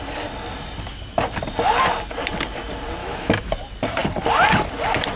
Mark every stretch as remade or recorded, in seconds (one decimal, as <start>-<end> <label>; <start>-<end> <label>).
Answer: 0.0-3.0 recorded; 3.0-3.5 remade; 3.5-5.2 recorded